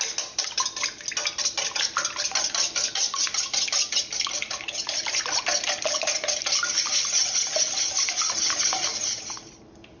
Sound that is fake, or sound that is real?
real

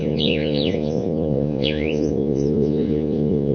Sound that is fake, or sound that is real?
fake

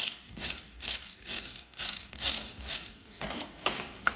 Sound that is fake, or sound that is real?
fake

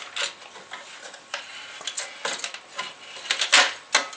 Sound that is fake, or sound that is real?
real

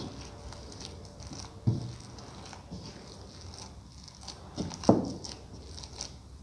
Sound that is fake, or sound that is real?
real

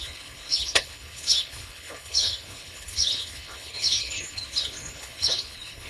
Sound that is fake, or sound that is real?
fake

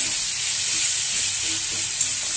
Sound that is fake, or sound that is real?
real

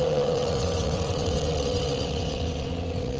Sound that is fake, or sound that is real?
fake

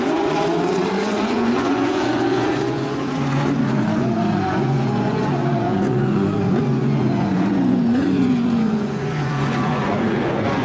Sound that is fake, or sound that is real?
fake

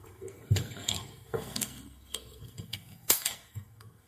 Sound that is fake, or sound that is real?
fake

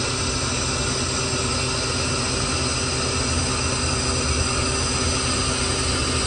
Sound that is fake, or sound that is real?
real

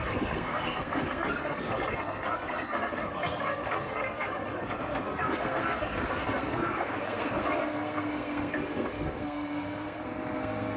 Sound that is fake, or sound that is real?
fake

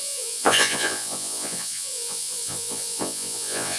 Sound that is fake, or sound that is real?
fake